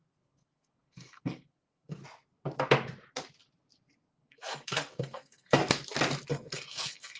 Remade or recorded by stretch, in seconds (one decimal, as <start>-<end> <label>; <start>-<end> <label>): 0.0-2.0 remade; 2.0-4.1 recorded; 4.1-5.6 remade; 5.6-6.3 recorded; 6.3-7.2 remade